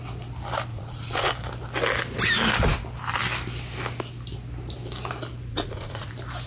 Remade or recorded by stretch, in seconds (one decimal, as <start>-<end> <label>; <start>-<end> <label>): 0.0-0.7 recorded; 0.7-1.3 remade; 1.3-5.5 recorded; 5.5-6.1 remade; 6.1-6.5 recorded